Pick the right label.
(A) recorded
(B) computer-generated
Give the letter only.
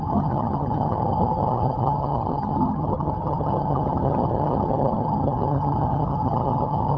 B